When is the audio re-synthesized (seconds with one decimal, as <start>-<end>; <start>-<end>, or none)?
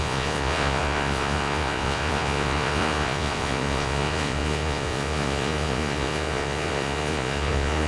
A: 0.0-7.9